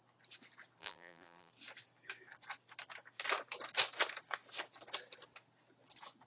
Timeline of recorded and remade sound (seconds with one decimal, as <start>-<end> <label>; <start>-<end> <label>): 0.0-0.8 recorded; 0.8-1.5 remade; 1.5-6.3 recorded